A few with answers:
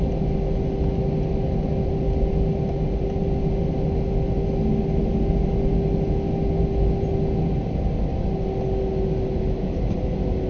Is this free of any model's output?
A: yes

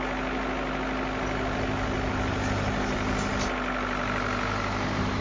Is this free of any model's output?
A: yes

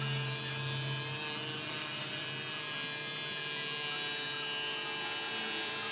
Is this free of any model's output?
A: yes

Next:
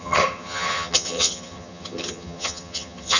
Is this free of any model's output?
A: no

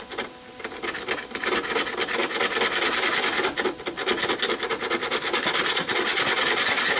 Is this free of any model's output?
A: yes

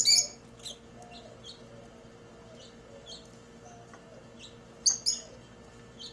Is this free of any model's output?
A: yes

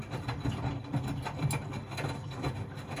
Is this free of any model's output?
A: yes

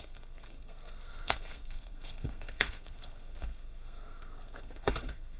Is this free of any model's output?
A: no